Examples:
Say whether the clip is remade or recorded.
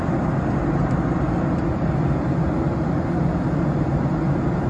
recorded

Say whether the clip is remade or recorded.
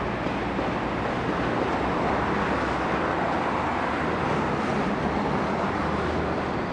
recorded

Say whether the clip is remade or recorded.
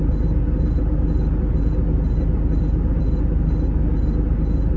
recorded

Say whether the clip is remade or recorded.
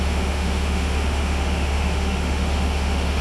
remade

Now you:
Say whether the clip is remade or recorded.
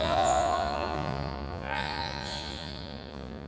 remade